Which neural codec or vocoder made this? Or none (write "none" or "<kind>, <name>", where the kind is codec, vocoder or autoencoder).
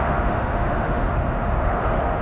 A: autoencoder, DAC-VAE